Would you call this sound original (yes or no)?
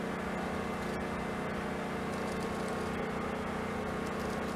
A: yes